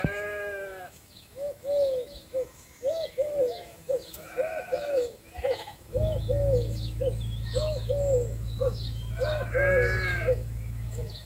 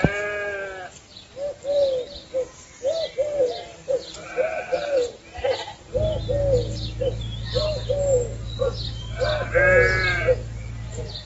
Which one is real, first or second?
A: second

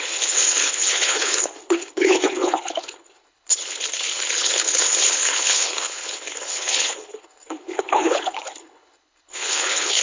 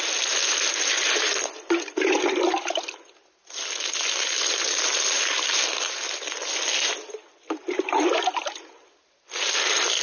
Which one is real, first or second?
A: second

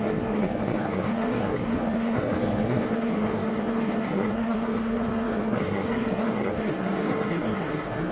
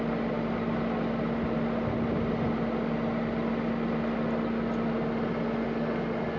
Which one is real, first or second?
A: second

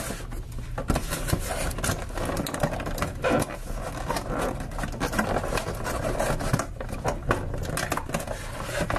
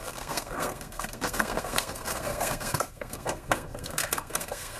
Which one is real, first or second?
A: first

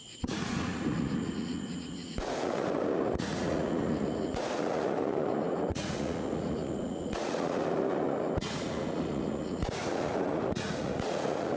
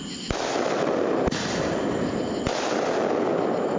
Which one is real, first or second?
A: second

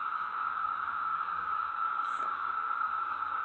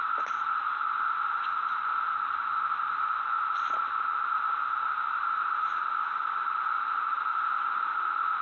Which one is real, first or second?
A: second